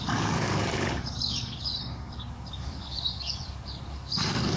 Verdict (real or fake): fake